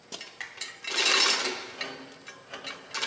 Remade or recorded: recorded